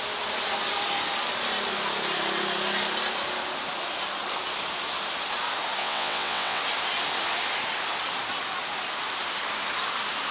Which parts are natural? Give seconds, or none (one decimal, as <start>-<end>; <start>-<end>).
0.0-5.8; 6.6-10.3